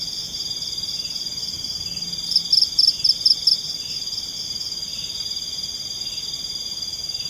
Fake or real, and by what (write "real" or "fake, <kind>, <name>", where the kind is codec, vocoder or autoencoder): fake, vocoder, BigVGAN v2